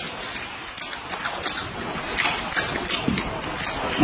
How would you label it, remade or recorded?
recorded